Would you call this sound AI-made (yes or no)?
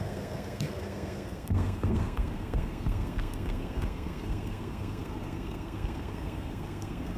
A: yes